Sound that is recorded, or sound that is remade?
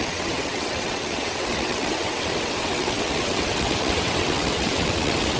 remade